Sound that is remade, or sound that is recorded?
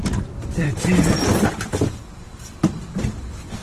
remade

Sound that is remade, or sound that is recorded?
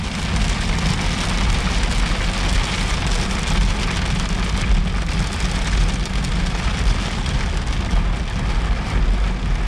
recorded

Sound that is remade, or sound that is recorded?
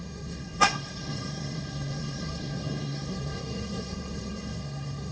remade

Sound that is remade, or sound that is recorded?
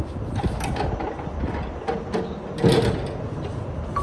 recorded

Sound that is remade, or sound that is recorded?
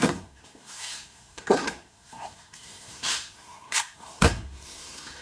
remade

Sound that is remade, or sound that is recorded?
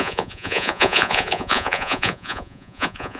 remade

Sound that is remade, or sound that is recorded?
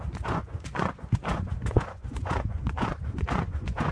remade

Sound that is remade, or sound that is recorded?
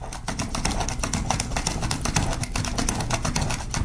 recorded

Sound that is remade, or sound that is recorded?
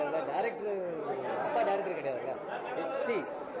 recorded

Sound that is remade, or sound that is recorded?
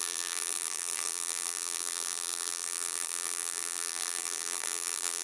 remade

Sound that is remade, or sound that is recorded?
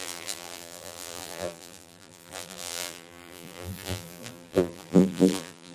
remade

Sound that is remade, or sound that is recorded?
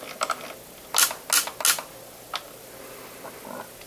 recorded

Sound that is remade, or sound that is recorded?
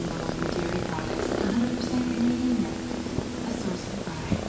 recorded